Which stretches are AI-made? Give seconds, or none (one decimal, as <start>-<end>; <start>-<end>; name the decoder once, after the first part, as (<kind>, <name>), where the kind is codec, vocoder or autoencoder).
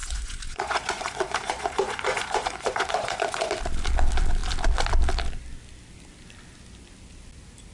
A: 0.0-3.5 (vocoder, Vocos)